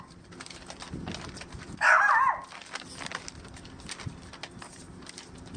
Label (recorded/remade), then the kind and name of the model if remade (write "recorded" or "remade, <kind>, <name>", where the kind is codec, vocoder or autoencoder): recorded